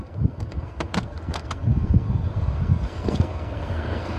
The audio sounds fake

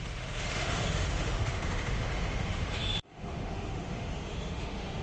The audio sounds fake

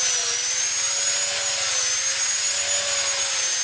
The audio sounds real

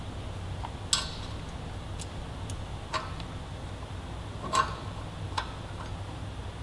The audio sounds real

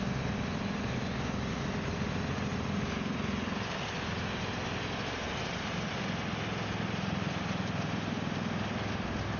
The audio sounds real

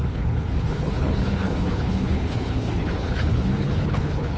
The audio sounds fake